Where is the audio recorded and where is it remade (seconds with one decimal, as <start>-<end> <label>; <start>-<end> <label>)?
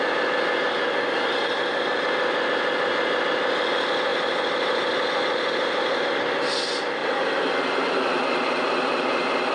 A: 0.0-4.1 recorded; 4.1-5.9 remade; 5.9-7.0 recorded; 7.0-8.0 remade; 8.0-9.5 recorded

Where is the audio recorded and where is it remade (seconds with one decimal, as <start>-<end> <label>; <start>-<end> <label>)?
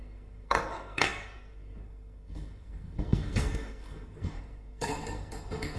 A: 0.0-5.8 remade